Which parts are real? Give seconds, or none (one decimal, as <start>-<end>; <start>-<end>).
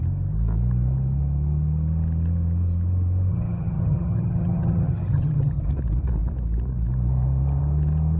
0.0-3.3; 5.6-8.2